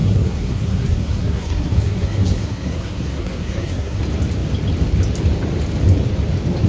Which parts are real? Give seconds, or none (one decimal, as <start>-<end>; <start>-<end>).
4.0-6.7

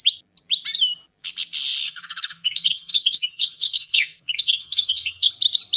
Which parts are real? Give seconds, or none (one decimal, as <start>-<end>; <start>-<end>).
0.0-1.8; 5.3-5.8

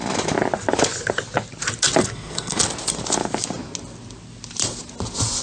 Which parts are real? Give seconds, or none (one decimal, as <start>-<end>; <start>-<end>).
0.0-2.0; 2.6-5.4

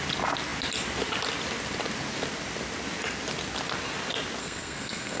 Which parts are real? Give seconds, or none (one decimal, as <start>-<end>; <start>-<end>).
0.0-4.4

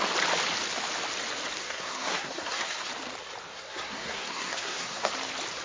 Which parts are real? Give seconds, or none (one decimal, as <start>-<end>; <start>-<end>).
0.0-1.6; 2.9-3.5; 5.1-5.6

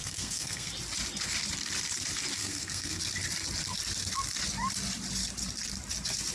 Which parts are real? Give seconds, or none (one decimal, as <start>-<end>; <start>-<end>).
0.7-2.4; 3.0-6.3